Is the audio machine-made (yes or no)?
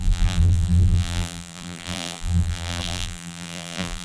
yes